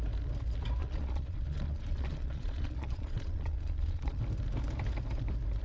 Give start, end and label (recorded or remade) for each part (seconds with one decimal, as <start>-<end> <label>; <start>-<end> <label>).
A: 0.0-0.8 recorded; 0.8-4.2 remade; 4.2-5.6 recorded